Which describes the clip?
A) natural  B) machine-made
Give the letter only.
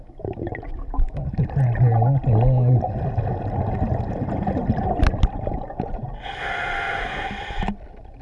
A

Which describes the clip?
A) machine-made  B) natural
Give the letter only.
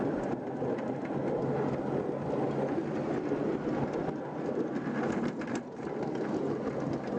B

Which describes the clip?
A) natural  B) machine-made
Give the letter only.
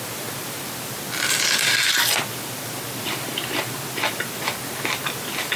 A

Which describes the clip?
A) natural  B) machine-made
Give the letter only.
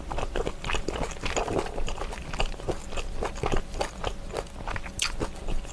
A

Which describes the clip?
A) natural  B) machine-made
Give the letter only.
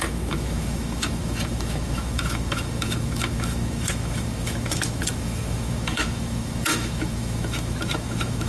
B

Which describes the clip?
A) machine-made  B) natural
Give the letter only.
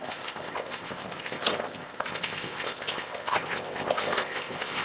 A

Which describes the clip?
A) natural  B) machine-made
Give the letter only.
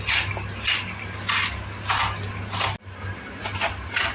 A